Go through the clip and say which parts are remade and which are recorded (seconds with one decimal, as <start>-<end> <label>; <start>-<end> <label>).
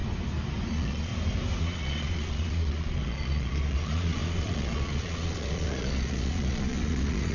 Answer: 0.0-0.7 recorded; 0.7-1.1 remade; 1.1-1.6 recorded; 1.6-7.3 remade